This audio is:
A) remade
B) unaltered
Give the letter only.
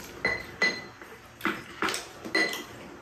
B